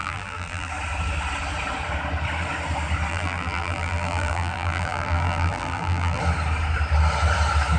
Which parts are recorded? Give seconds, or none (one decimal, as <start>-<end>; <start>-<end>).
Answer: 0.7-3.1; 6.2-7.8